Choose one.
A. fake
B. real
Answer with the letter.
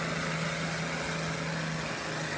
B